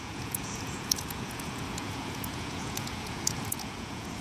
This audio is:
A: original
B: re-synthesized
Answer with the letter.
B